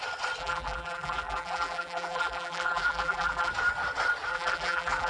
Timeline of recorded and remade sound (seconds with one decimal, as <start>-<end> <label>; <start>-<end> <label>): 0.0-0.4 recorded; 0.4-3.5 remade; 3.5-4.3 recorded; 4.3-5.1 remade

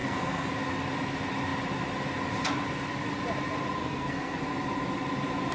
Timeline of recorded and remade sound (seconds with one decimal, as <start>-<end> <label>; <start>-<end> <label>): 0.0-0.5 remade; 0.5-3.8 recorded; 3.8-4.4 remade; 4.4-5.5 recorded

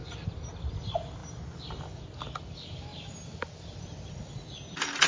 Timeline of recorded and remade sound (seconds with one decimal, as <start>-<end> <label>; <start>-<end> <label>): 0.0-5.1 recorded

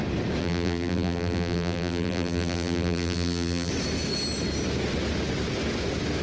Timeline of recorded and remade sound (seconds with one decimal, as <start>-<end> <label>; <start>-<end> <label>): 0.0-0.4 recorded; 0.4-3.7 remade; 3.7-6.2 recorded

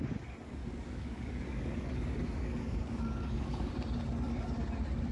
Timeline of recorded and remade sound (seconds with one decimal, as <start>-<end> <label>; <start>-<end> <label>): 0.0-0.6 recorded; 0.6-3.7 remade; 3.7-5.1 recorded

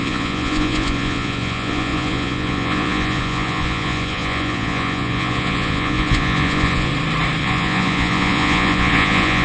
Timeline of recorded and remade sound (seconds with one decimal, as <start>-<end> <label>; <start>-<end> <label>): 0.0-6.9 remade; 6.9-7.4 recorded; 7.4-9.4 remade

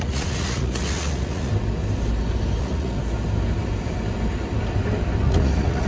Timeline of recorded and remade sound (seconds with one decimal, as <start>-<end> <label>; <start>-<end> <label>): 0.0-1.5 remade; 1.5-2.6 recorded; 2.6-3.0 remade; 3.0-5.2 recorded; 5.2-5.9 remade

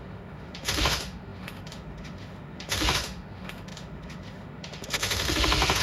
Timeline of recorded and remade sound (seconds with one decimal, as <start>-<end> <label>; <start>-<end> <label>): 0.0-5.8 remade